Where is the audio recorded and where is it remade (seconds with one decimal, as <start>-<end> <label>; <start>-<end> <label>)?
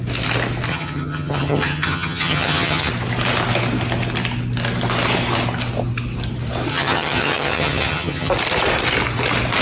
0.0-0.7 recorded; 0.7-2.9 remade; 2.9-6.7 recorded; 6.7-8.3 remade; 8.3-9.6 recorded